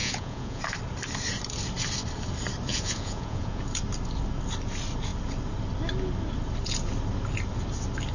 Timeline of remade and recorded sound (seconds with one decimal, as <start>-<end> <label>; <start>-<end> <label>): 0.0-0.6 remade; 0.6-2.7 recorded; 2.7-3.6 remade; 3.6-8.1 recorded